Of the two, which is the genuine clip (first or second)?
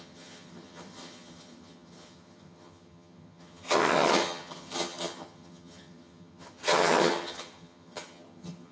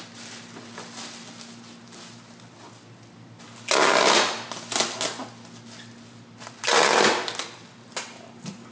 second